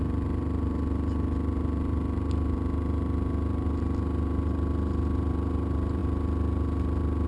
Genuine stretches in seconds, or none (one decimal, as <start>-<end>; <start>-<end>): 0.0-7.3